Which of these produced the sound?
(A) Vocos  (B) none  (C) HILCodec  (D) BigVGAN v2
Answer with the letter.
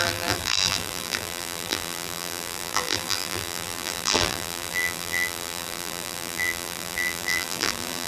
D